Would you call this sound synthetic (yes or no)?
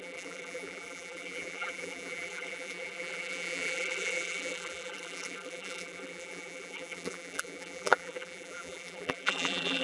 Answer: yes